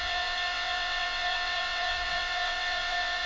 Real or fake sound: fake